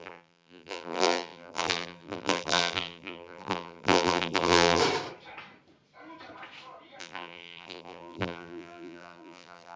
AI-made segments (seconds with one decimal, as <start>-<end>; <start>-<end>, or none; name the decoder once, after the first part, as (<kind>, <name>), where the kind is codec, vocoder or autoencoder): 0.0-4.8 (vocoder, BigVGAN v2); 7.0-9.8